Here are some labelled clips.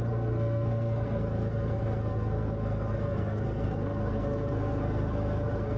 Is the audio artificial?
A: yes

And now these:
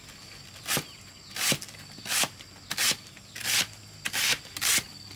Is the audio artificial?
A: no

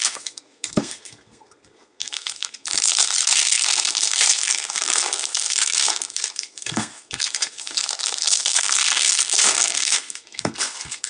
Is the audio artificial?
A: yes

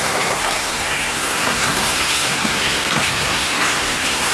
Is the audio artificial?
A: yes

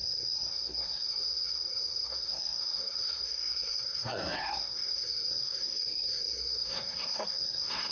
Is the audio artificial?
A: yes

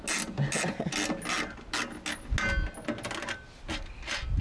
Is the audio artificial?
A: no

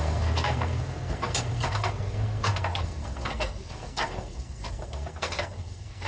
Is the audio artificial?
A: yes